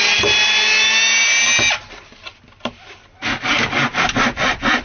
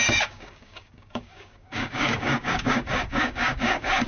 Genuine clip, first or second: first